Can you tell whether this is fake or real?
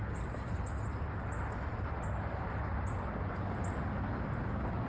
real